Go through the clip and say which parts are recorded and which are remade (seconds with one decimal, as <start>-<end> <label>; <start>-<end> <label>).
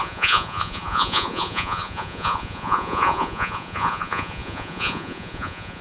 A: 0.0-5.8 remade